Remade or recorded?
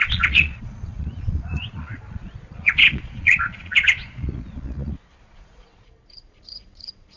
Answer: remade